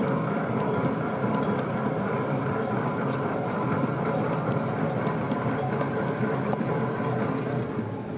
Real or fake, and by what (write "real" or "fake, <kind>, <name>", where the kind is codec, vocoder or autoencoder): real